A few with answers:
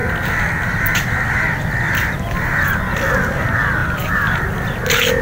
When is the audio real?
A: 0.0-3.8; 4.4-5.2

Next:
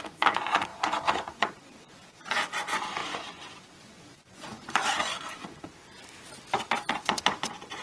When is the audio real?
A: 5.7-6.9

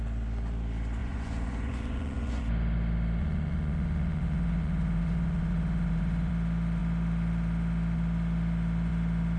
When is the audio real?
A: 0.0-1.0; 2.4-3.2; 6.3-9.4

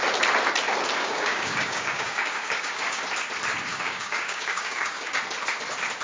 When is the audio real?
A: 0.0-1.0; 3.0-3.7; 5.2-6.0

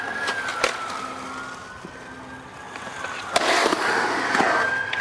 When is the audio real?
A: 0.0-5.0

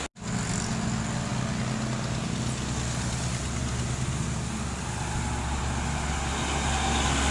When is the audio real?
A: 0.0-7.3

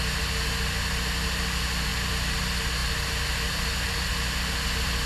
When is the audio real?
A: 0.0-5.1